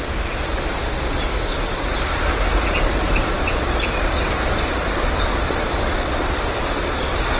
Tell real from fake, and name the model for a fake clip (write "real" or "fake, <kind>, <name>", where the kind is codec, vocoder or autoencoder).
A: real